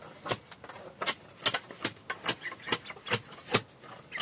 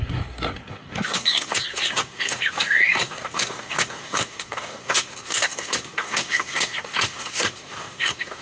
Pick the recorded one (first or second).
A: first